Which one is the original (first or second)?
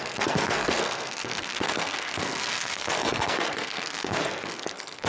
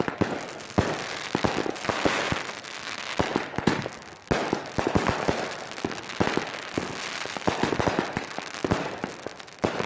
second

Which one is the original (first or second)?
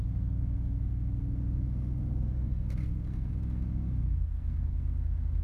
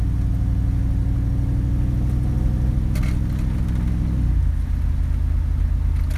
second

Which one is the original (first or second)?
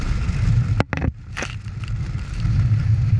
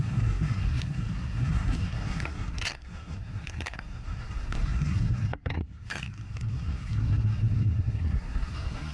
first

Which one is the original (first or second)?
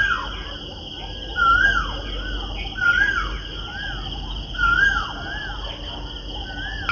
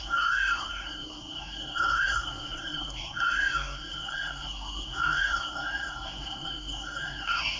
first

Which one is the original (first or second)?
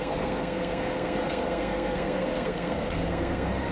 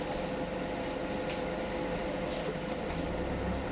second